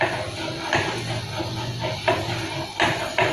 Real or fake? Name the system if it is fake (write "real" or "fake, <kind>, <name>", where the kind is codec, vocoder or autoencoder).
real